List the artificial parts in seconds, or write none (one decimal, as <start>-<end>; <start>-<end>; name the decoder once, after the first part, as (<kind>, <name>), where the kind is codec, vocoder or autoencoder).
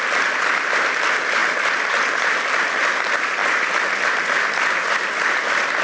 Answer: none